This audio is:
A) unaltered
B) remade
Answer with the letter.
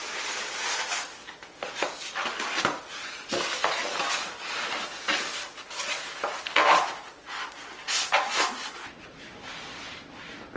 A